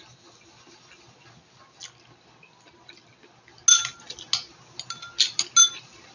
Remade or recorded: recorded